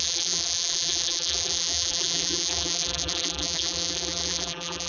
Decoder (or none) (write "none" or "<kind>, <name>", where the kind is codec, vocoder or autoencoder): vocoder, BigVGAN v2